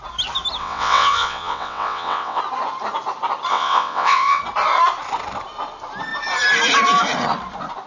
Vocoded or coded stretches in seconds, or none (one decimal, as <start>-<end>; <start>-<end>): 0.6-2.4; 3.5-4.4